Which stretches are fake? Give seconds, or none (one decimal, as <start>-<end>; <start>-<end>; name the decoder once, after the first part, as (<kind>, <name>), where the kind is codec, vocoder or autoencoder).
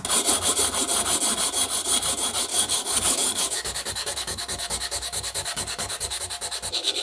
2.5-6.2 (codec, DAC)